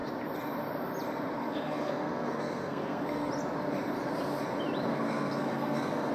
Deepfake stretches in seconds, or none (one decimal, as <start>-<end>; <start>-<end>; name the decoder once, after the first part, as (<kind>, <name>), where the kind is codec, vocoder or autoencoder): 1.4-3.3 (codec, SNAC); 4.9-6.1